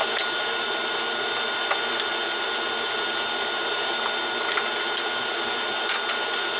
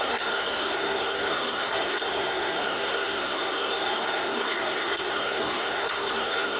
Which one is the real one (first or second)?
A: first